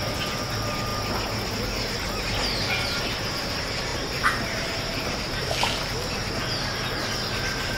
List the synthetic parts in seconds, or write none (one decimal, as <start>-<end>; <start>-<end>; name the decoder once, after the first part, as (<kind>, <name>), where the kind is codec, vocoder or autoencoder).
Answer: 3.9-5.4 (vocoder, BigVGAN v2)